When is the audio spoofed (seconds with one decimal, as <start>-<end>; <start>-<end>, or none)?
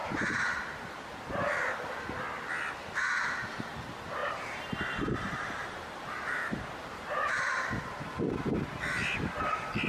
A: 0.0-1.2; 4.2-7.4